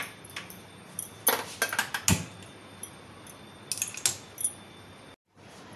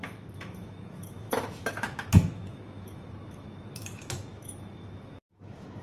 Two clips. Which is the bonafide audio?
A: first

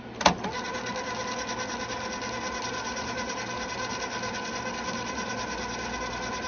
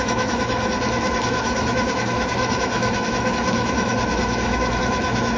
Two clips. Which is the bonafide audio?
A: first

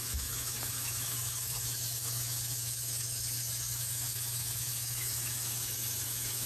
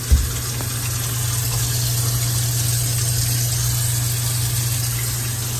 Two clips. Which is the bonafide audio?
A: second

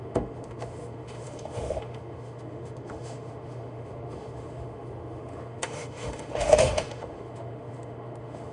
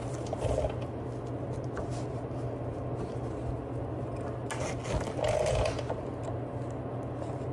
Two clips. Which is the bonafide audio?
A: second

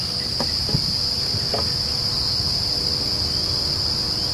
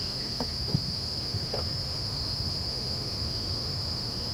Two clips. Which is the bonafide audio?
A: first